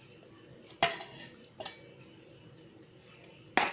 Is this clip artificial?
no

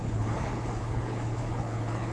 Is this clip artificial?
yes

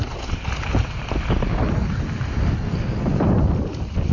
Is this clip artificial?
no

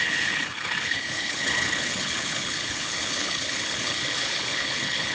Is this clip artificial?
yes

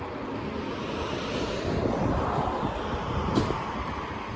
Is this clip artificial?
no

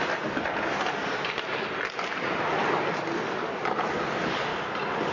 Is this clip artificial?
no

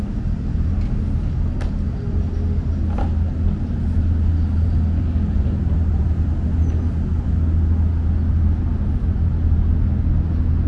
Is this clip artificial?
no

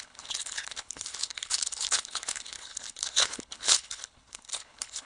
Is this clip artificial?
yes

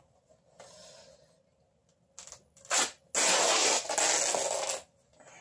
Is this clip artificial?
no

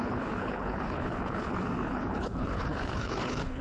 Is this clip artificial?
yes